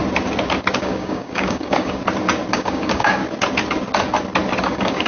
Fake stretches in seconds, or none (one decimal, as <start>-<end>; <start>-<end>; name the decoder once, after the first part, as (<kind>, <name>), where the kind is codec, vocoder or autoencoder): 0.8-2.0 (codec, DAC); 2.5-3.2; 4.6-5.1